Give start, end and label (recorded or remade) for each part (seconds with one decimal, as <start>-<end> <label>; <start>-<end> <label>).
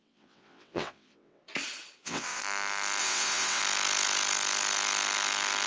0.0-1.4 remade; 1.4-2.0 recorded; 2.0-2.4 remade; 2.4-3.0 recorded; 3.0-3.6 remade; 3.6-5.7 recorded